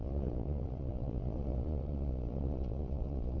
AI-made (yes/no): yes